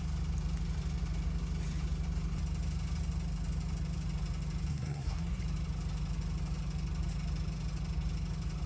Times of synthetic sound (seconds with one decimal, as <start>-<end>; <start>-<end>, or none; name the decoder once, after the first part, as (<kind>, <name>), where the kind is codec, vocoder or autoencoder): 4.7-5.4 (codec, SNAC)